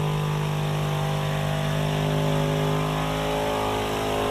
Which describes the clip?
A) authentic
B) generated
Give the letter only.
A